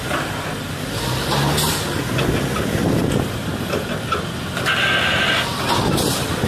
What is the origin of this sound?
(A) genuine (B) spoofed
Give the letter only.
A